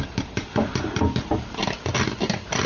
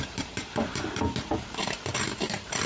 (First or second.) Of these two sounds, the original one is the first